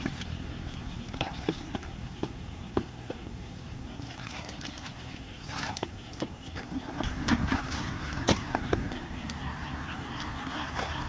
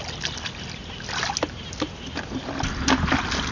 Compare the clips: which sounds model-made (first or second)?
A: first